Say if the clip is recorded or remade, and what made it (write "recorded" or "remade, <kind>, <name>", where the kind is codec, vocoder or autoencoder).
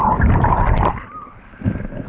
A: recorded